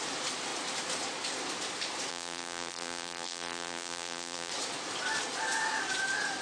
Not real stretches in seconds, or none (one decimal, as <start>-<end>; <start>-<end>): 2.1-4.5